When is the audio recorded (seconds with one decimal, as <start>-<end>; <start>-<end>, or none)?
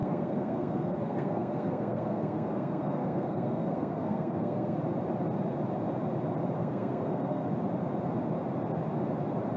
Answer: 4.8-6.6; 7.5-9.6